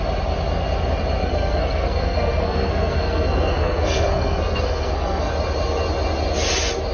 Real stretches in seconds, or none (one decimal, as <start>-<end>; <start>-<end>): 0.0-1.2; 5.3-6.9